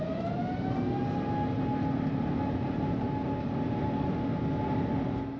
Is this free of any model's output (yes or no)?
yes